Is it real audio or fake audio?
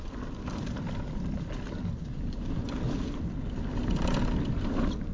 real